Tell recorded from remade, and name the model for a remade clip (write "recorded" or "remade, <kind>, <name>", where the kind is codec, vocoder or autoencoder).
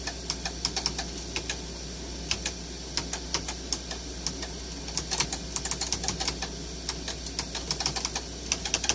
recorded